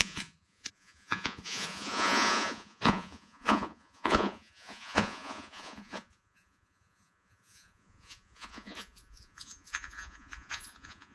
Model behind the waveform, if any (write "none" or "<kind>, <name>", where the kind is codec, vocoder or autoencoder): vocoder, Vocos